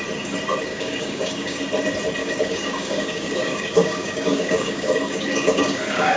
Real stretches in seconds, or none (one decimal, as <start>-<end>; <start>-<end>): 0.0-0.7; 1.6-2.2